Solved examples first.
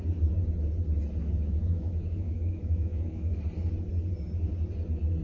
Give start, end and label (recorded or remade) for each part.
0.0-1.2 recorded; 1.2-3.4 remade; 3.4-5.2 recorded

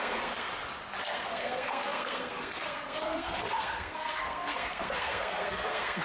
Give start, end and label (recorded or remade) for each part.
0.0-0.5 remade; 0.5-1.0 recorded; 1.0-6.0 remade

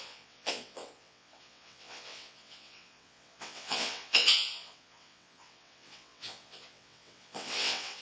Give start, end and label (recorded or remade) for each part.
0.0-8.0 remade

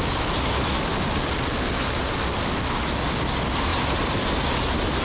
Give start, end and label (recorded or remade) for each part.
0.0-5.0 recorded

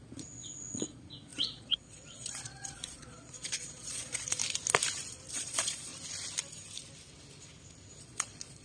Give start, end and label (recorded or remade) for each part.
0.0-4.4 remade; 4.4-5.3 recorded; 5.3-5.9 remade; 5.9-8.0 recorded; 8.0-8.6 remade

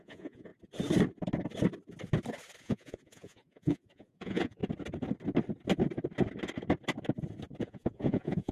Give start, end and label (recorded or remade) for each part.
0.0-0.5 remade; 0.5-2.6 recorded; 2.6-4.6 remade; 4.6-7.6 recorded; 7.6-8.5 remade

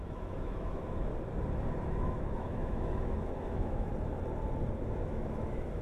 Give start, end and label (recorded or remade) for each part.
0.0-1.1 remade; 1.1-1.8 recorded; 1.8-3.9 remade; 3.9-4.8 recorded; 4.8-5.8 remade